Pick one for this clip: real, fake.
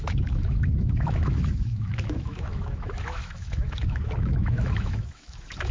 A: fake